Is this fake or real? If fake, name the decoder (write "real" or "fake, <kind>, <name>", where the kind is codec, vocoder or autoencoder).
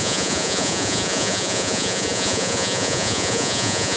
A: fake, vocoder, Vocos